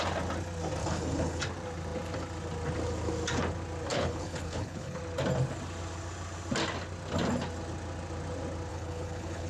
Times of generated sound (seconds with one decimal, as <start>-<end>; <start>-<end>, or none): 0.8-1.4; 3.9-5.0; 8.7-9.5